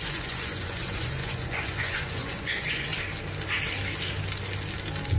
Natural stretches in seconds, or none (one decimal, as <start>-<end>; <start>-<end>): 2.9-5.2